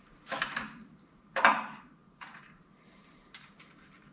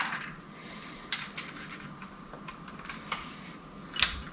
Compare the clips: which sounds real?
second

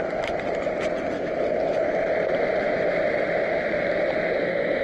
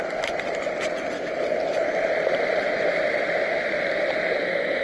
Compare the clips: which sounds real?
first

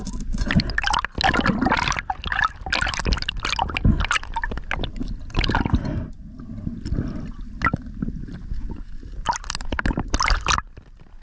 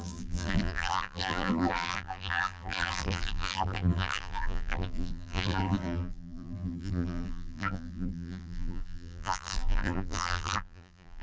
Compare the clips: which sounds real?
first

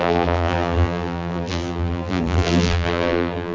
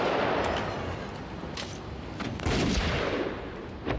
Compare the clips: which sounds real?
second